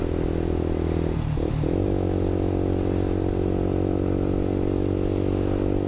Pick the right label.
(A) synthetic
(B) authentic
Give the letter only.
B